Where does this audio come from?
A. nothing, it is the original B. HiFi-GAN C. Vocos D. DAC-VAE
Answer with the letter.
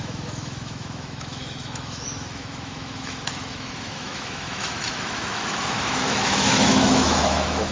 D